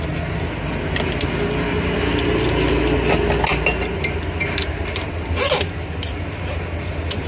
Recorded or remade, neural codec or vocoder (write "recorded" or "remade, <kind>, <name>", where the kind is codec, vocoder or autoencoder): recorded